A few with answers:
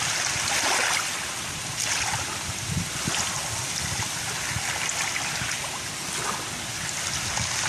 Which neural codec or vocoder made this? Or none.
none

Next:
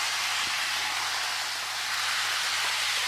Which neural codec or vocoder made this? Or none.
none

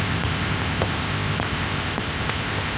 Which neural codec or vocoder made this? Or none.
codec, ZipCodec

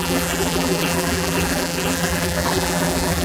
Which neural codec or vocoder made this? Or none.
vocoder, BigVGAN v2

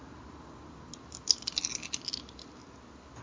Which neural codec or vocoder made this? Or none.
none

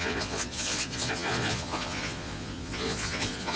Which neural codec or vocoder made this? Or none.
vocoder, Vocos